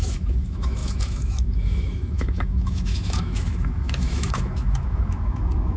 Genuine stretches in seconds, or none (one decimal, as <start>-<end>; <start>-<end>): none